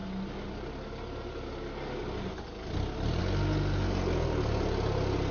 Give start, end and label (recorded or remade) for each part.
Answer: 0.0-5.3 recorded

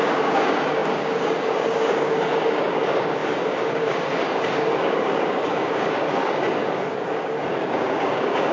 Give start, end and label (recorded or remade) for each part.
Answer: 0.0-8.5 remade